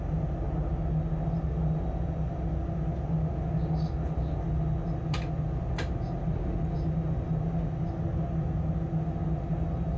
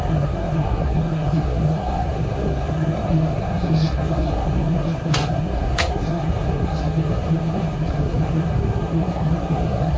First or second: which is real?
first